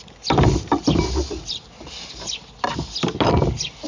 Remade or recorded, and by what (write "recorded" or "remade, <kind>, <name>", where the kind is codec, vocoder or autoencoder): recorded